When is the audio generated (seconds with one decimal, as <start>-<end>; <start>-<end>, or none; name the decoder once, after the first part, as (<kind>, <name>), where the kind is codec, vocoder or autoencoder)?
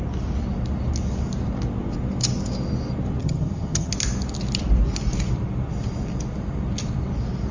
3.2-3.9 (vocoder, HiFi-GAN)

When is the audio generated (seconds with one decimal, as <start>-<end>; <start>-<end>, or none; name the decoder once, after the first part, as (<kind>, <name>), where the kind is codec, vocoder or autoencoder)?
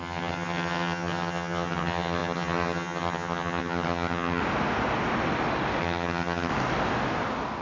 0.0-4.4 (vocoder, HiFi-GAN); 5.8-6.5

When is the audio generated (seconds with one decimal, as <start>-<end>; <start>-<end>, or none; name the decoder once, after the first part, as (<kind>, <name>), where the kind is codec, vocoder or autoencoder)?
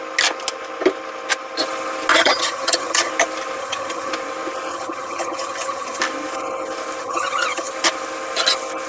2.1-3.1 (vocoder, HiFi-GAN); 3.6-4.1; 4.7-6.0; 7.0-7.7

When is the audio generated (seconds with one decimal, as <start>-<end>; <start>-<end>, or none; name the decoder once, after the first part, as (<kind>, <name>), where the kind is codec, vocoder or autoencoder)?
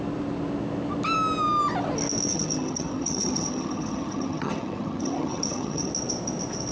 2.3-5.9 (vocoder, HiFi-GAN)